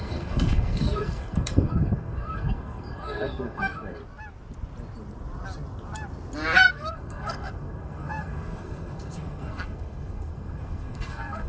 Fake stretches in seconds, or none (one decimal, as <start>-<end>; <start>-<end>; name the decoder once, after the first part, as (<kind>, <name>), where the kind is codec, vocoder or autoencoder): 0.0-4.0 (codec, SNAC); 6.7-11.5